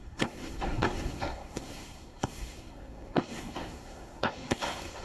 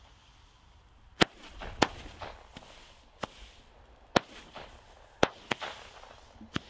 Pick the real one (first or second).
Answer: second